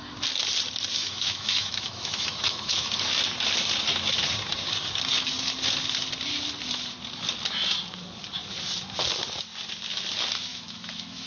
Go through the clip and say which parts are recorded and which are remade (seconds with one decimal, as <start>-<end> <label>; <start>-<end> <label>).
0.0-1.0 recorded; 1.0-2.9 remade; 2.9-10.5 recorded; 10.5-11.3 remade